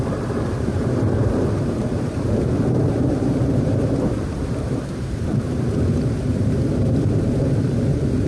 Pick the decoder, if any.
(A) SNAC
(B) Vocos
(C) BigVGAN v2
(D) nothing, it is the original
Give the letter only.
C